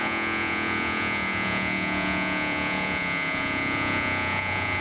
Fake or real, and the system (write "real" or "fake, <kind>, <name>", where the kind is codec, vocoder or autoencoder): fake, vocoder, Vocos